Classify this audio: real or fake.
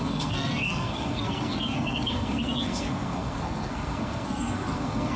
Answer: fake